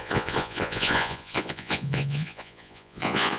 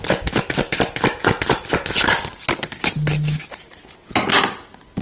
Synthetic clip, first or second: first